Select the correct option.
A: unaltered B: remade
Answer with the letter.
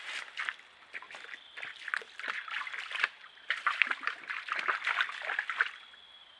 A